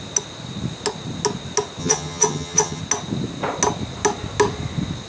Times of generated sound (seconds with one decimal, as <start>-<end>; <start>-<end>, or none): 1.8-2.8